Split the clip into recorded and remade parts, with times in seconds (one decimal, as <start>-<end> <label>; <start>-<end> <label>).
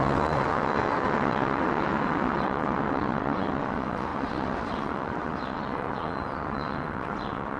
0.0-7.6 remade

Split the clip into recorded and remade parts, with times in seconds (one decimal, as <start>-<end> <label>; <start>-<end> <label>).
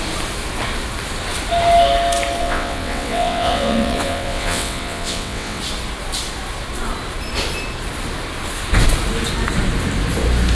0.0-2.4 recorded; 2.4-5.6 remade; 5.6-10.5 recorded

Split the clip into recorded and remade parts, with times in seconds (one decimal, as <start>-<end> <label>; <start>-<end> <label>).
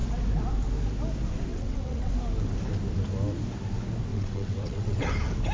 0.0-1.5 recorded; 1.5-2.1 remade; 2.1-4.1 recorded; 4.1-5.1 remade; 5.1-5.5 recorded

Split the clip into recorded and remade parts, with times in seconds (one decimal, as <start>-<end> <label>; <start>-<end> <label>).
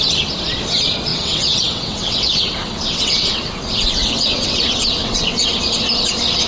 0.0-1.1 recorded; 1.1-3.6 remade; 3.6-4.0 recorded; 4.0-4.6 remade; 4.6-5.0 recorded; 5.0-5.5 remade; 5.5-6.5 recorded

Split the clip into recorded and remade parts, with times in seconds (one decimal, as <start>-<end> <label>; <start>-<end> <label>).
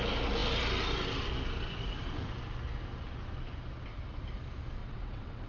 0.0-4.8 recorded; 4.8-5.5 remade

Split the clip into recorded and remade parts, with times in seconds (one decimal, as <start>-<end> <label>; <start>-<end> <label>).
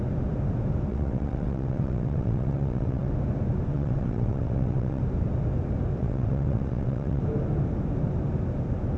0.0-0.9 recorded; 0.9-3.1 remade; 3.1-3.7 recorded; 3.7-5.0 remade; 5.0-6.0 recorded; 6.0-7.2 remade; 7.2-9.0 recorded